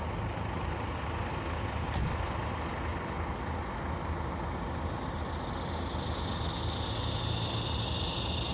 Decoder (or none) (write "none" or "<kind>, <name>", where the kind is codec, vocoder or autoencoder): none